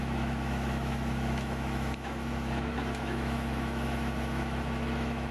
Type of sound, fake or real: fake